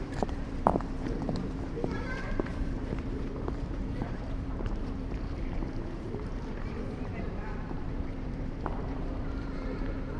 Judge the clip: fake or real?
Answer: fake